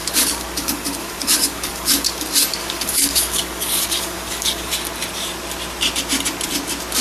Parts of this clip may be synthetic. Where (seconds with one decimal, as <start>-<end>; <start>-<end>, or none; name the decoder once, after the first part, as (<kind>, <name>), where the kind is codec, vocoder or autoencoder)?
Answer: 0.0-2.2 (codec, DAC); 2.6-4.7